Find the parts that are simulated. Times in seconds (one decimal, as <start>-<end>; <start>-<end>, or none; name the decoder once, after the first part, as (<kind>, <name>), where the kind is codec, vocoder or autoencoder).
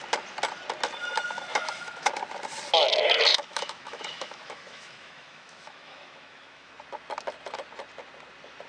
1.5-2.1 (autoencoder, DAC-VAE); 3.3-6.7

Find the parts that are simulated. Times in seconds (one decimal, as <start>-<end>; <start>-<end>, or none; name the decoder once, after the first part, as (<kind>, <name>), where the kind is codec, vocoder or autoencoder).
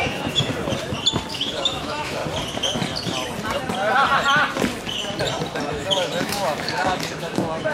0.0-0.5 (autoencoder, DAC-VAE); 1.3-2.2; 5.7-7.7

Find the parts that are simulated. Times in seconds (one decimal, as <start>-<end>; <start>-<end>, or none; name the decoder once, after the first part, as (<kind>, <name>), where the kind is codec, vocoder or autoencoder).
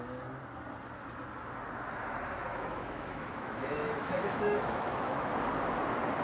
2.5-5.3 (autoencoder, DAC-VAE)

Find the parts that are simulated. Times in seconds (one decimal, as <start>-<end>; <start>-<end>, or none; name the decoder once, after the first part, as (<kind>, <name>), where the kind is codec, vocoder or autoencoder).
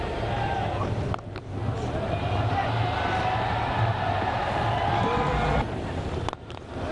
none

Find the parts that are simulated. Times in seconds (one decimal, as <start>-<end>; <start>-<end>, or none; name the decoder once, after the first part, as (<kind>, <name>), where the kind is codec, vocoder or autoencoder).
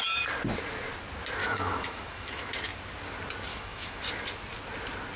1.4-2.5 (autoencoder, DAC-VAE); 3.5-4.0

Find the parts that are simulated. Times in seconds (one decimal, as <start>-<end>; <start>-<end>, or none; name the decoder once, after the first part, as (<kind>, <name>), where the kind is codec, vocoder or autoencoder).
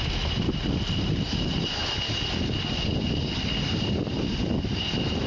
none